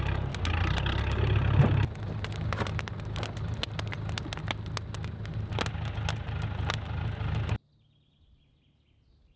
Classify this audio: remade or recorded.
recorded